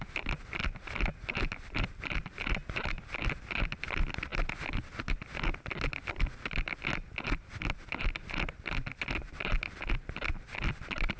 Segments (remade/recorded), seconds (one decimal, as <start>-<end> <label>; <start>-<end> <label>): 0.0-11.2 recorded